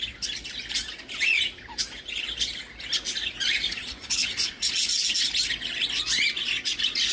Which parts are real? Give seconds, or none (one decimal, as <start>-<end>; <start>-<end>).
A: 0.0-3.8; 4.7-7.1